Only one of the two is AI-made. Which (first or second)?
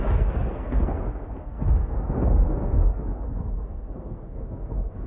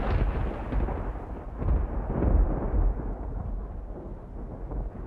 first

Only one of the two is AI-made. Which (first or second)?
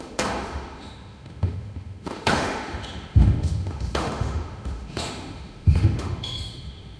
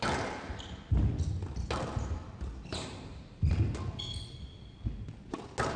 first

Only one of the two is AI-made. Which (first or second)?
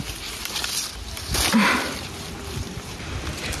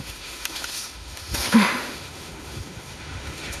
second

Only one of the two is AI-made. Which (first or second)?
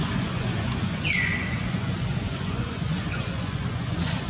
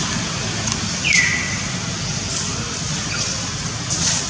first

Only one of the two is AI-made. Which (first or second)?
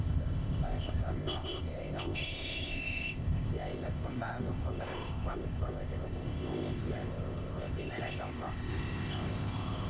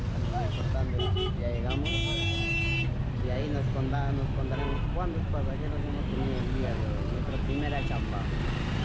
first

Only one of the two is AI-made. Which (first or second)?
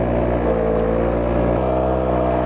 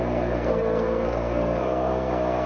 second